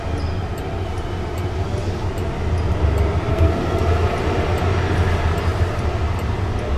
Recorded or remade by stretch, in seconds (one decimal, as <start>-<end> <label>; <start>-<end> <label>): 0.0-3.3 recorded; 3.3-3.8 remade; 3.8-6.8 recorded